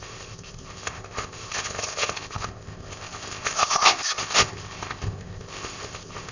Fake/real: fake